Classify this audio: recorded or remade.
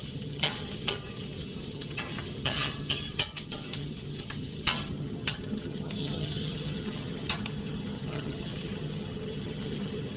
remade